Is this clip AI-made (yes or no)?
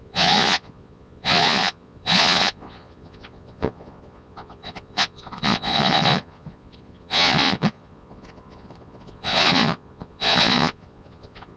yes